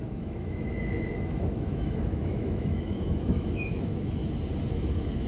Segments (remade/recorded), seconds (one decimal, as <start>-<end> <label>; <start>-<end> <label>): 0.0-4.2 remade; 4.2-4.7 recorded; 4.7-5.3 remade